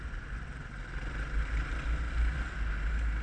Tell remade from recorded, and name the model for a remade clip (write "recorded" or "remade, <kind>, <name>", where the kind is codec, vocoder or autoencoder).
recorded